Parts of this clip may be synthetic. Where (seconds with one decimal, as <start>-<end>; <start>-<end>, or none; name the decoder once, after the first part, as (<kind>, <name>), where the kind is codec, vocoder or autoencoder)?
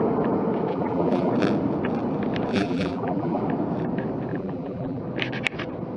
0.7-1.3 (vocoder, BigVGAN v2); 2.5-3.4; 4.3-5.0